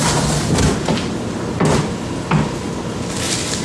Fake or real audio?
real